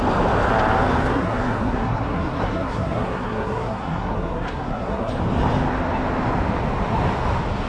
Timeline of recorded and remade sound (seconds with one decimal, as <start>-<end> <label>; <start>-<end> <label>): 0.0-1.1 recorded; 1.1-5.1 remade; 5.1-7.7 recorded